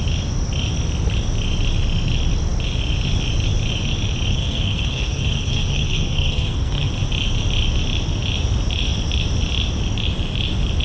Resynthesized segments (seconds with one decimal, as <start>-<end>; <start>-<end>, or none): 4.3-6.9